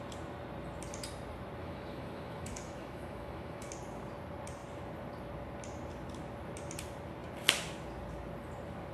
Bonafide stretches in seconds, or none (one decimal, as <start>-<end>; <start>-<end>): 0.0-1.6; 3.7-8.9